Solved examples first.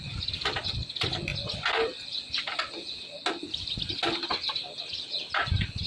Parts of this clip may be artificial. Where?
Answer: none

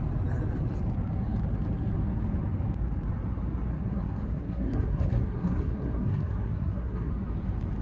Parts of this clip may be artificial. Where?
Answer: 3.7-7.1 (codec, SNAC)

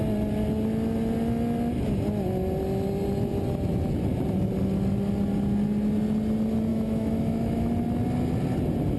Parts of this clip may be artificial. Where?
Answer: 6.7-7.7 (autoencoder, DAC-VAE)

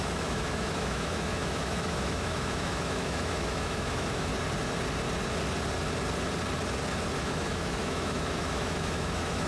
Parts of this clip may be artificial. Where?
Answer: 0.0-4.3 (autoencoder, DAC-VAE); 7.1-9.5

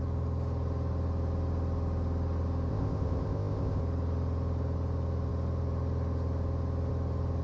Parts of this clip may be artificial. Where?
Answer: 2.7-3.8 (codec, ZipCodec)